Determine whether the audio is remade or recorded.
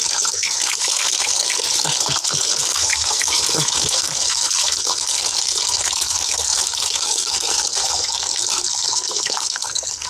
remade